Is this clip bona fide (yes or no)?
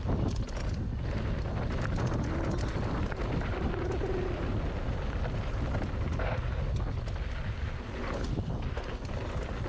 yes